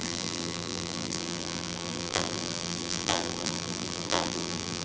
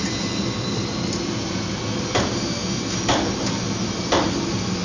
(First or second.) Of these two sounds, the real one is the second